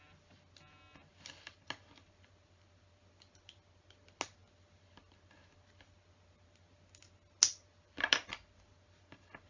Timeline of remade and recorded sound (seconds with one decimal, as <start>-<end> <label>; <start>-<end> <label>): 0.0-9.5 recorded